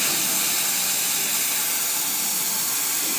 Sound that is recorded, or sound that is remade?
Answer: recorded